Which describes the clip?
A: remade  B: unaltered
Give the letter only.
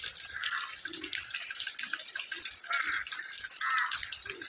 B